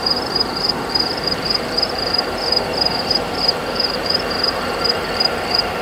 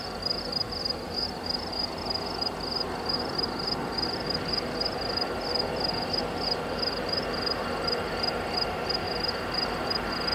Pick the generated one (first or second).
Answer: first